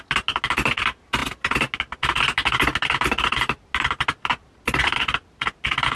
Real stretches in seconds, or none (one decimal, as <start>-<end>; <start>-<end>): 0.0-6.0